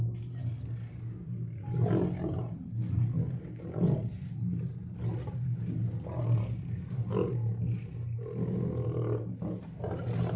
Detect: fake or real real